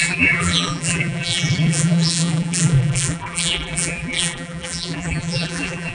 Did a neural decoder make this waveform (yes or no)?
yes